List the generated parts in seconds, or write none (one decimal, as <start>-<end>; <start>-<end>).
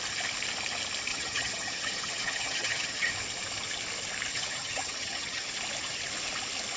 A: 1.1-3.1; 4.3-5.5